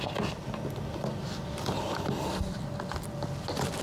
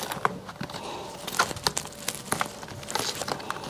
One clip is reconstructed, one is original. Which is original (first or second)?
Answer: first